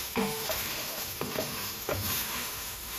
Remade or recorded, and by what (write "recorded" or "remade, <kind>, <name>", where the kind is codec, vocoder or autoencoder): remade, autoencoder, DAC-VAE